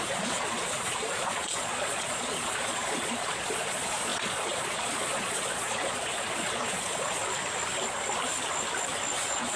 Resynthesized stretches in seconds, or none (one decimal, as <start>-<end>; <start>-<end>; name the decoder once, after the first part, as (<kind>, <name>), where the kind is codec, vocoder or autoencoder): 0.0-7.2 (vocoder, Vocos); 9.1-9.6